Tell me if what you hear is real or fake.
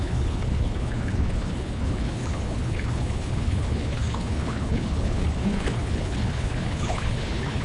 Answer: fake